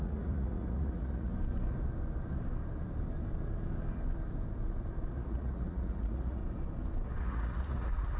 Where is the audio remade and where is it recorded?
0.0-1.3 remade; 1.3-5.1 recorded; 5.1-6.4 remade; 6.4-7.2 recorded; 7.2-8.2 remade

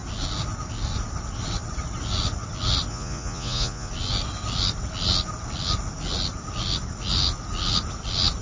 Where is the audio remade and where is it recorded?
0.0-2.9 recorded; 2.9-3.9 remade; 3.9-8.4 recorded

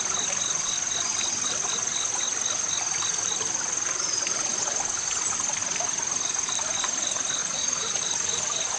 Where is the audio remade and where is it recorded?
0.0-7.4 recorded; 7.4-8.0 remade; 8.0-8.8 recorded

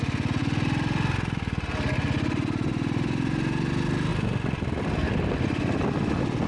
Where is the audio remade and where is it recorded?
0.0-6.5 recorded

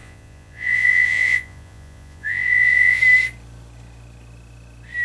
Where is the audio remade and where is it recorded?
0.0-3.0 remade; 3.0-5.0 recorded